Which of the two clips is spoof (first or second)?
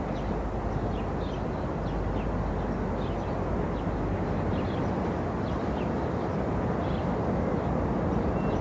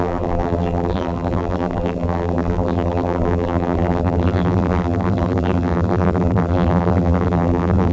second